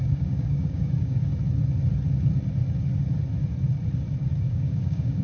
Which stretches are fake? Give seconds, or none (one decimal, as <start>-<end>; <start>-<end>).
0.0-1.3; 4.4-5.2

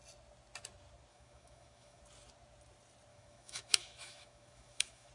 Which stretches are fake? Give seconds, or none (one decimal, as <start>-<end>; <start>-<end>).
1.1-2.0; 3.1-5.1

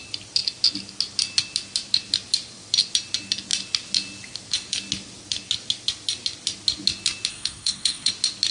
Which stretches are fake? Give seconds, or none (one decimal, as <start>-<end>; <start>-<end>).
7.3-8.1